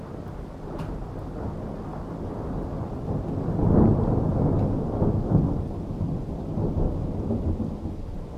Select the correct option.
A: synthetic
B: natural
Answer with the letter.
B